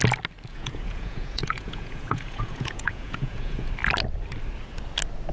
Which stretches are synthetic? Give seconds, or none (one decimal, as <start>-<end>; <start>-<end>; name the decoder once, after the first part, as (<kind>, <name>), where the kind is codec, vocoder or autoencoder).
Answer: 0.5-3.7 (vocoder, Vocos)